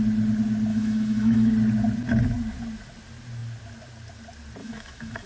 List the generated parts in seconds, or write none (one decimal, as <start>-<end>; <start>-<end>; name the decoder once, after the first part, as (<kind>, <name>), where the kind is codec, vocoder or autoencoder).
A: 0.7-1.5 (autoencoder, DAC-VAE); 4.6-5.3